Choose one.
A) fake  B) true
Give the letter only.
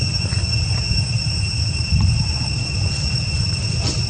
B